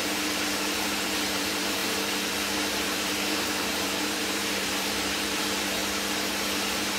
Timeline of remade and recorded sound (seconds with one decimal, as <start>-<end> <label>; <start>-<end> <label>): 0.0-5.8 remade; 5.8-7.0 recorded